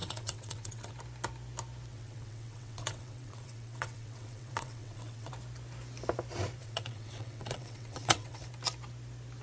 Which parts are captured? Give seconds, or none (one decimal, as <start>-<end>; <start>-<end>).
0.9-1.9; 5.3-6.6; 8.4-9.4